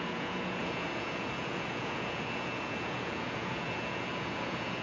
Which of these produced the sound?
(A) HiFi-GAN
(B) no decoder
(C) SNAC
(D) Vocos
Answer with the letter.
D